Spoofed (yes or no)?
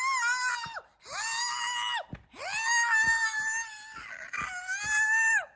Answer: no